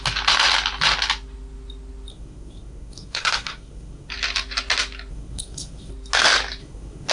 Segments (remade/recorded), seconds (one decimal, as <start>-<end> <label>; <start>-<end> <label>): 0.0-2.1 recorded; 2.1-4.1 remade; 4.1-5.1 recorded; 5.1-5.9 remade; 5.9-6.6 recorded; 6.6-7.1 remade